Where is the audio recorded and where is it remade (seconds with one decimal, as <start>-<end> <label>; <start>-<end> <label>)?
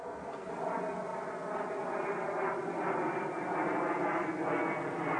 0.0-0.5 remade; 0.5-5.2 recorded